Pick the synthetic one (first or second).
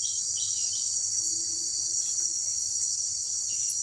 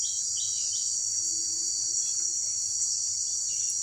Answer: first